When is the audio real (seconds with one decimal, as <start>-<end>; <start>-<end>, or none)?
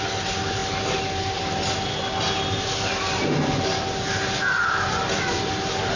0.0-6.0